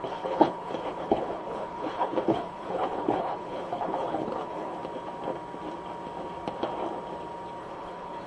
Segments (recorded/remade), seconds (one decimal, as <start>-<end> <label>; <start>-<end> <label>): 0.0-4.8 remade; 4.8-7.6 recorded; 7.6-8.3 remade